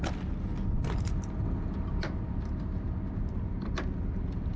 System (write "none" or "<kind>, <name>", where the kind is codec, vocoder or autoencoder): none